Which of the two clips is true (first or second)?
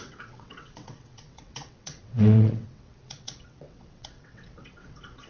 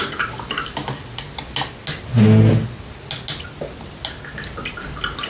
second